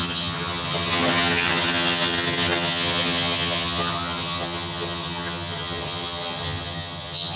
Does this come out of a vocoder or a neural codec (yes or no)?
yes